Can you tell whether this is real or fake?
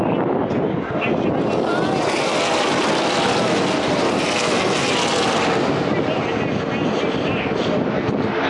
real